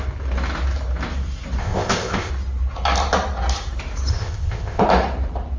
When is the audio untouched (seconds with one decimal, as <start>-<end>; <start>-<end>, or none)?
0.0-1.6; 2.3-4.1; 4.8-5.6

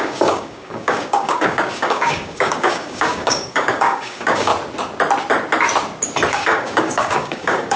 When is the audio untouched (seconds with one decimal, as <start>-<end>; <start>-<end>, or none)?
4.5-6.3

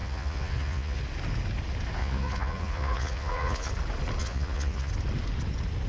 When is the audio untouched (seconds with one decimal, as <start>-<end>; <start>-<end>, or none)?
1.0-2.0; 3.7-4.2; 4.9-5.9

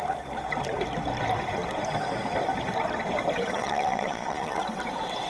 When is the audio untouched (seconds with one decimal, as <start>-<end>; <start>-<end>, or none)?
0.0-3.5; 4.6-5.3